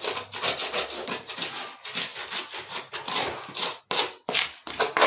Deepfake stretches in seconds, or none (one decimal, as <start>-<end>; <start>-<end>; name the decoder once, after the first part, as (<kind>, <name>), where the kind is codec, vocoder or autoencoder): none